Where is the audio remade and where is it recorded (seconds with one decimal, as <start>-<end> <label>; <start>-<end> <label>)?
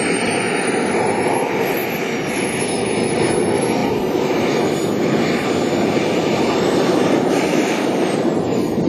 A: 0.0-8.9 recorded